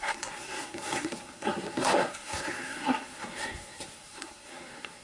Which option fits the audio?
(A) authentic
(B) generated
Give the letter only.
B